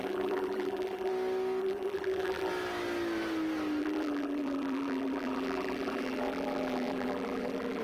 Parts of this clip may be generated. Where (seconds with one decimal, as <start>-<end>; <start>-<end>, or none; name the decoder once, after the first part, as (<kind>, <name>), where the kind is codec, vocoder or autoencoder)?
0.0-1.1 (vocoder, BigVGAN v2); 1.6-2.5; 3.8-7.8